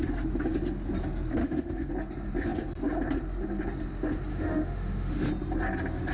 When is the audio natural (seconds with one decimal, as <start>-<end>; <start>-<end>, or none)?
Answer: 0.0-1.4; 1.9-4.3; 5.3-6.1